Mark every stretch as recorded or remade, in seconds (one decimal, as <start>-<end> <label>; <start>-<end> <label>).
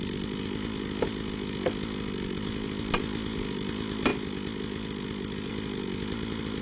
0.0-6.6 recorded